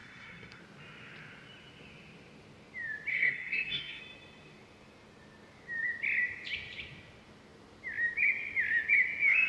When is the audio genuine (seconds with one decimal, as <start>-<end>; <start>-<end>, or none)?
0.6-3.1; 4.0-9.5